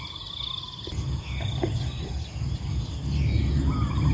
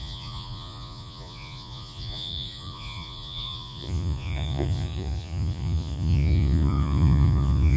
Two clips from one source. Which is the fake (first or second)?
second